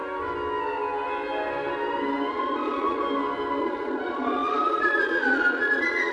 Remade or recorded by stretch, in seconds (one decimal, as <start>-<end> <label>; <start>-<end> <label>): 0.0-2.3 recorded; 2.3-3.0 remade; 3.0-3.6 recorded; 3.6-6.1 remade